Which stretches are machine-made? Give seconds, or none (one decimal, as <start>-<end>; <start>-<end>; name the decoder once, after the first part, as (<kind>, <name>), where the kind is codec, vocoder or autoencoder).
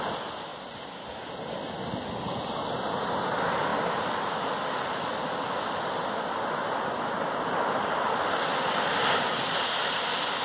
none